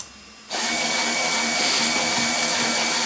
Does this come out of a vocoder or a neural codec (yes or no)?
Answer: no